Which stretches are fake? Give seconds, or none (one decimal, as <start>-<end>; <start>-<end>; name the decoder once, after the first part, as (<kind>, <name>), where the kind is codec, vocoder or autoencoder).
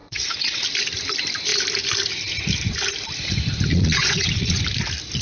0.0-0.6 (vocoder, Vocos); 3.7-4.6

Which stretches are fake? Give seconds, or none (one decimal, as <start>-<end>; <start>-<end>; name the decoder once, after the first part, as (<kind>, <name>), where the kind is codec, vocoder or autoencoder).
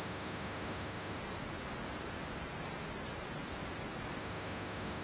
0.0-1.2 (autoencoder, DAC-VAE); 4.2-5.0